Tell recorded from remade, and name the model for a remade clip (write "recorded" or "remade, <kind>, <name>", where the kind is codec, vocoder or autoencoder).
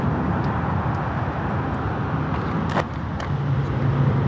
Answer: recorded